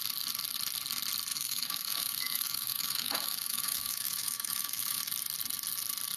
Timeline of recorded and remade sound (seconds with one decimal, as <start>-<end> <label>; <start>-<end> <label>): 0.0-1.3 recorded; 1.3-5.0 remade; 5.0-6.2 recorded